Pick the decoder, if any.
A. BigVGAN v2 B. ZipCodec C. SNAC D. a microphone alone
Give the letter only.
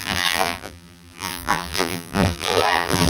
A